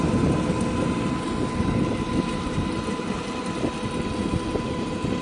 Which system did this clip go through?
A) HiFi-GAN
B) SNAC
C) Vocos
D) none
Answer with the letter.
D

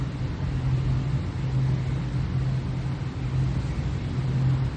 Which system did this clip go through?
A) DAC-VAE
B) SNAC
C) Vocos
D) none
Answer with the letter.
D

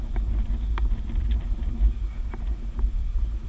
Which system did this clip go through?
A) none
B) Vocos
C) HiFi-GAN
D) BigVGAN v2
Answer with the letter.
A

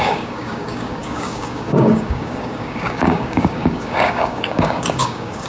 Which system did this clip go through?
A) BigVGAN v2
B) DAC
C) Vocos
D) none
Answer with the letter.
B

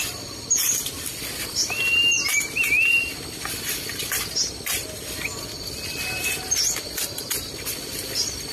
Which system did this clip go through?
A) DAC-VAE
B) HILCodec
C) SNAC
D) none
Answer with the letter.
D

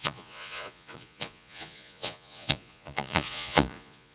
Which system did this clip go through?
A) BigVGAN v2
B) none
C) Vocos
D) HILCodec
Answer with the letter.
C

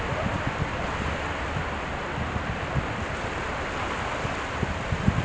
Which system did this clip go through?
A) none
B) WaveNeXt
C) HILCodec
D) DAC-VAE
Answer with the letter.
A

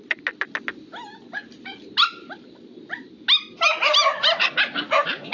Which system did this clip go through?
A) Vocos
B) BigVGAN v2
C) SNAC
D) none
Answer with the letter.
D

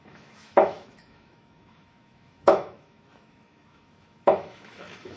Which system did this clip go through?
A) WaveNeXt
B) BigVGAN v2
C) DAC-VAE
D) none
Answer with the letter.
C